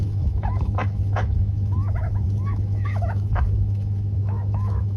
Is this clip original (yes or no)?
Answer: no